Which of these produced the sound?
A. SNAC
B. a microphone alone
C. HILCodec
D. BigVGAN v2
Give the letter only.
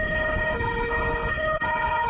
C